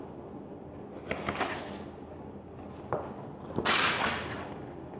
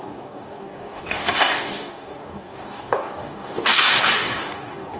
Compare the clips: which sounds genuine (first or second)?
first